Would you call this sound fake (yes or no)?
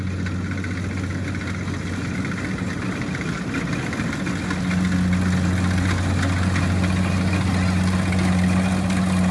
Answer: no